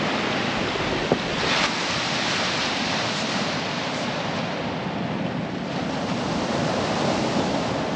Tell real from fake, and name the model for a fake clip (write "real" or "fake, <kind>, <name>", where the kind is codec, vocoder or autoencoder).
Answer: real